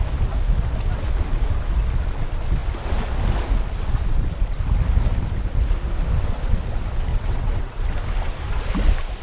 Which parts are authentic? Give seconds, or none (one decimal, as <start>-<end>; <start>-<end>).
0.0-7.1; 7.8-9.2